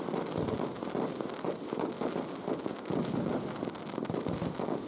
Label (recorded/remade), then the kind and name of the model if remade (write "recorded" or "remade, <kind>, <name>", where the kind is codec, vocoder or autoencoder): recorded